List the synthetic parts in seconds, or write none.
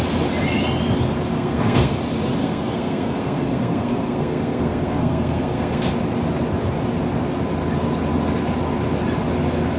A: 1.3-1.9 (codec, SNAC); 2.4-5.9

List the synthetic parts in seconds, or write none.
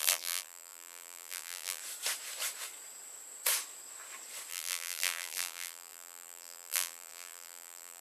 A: 0.0-1.8 (vocoder, BigVGAN v2); 4.5-8.0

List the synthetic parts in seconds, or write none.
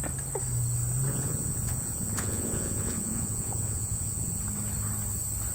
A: 1.1-4.4 (vocoder, Vocos)